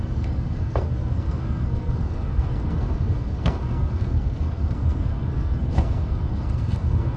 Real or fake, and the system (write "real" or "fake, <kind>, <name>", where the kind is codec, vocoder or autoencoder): fake, codec, SNAC